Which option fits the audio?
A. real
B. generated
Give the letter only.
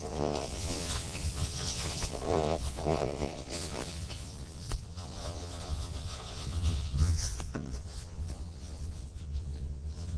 B